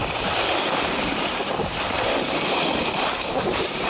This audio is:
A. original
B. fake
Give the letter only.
B